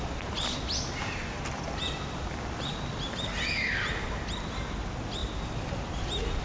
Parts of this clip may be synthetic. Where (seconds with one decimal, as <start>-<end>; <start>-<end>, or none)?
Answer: none